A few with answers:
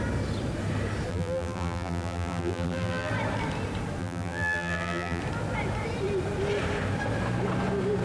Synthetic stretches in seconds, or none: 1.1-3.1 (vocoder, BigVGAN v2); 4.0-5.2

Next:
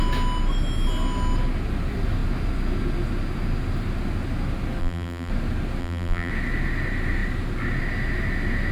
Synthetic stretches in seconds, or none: 4.8-5.3 (vocoder, BigVGAN v2); 5.8-6.3

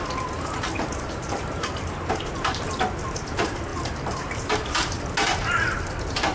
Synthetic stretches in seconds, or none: 1.2-2.7 (vocoder, BigVGAN v2); 3.7-4.9

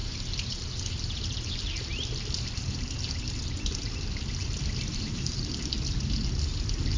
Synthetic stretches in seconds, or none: 0.0-1.8 (vocoder, BigVGAN v2); 4.9-5.5

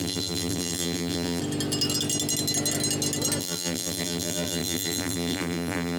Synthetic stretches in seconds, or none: 0.0-1.4 (vocoder, BigVGAN v2); 3.4-6.0